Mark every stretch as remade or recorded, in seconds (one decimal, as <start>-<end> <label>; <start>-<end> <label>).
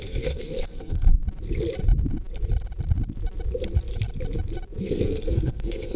0.0-1.2 remade; 1.2-4.8 recorded; 4.8-6.0 remade